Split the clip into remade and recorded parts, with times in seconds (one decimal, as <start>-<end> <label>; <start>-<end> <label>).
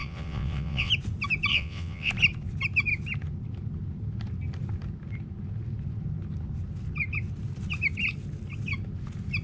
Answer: 0.0-0.9 remade; 0.9-1.5 recorded; 1.5-2.1 remade; 2.1-9.4 recorded